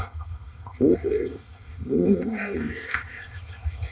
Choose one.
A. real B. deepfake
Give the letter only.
B